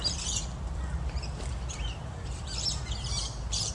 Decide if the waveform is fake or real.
fake